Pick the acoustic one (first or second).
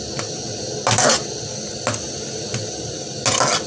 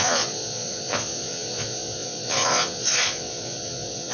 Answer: first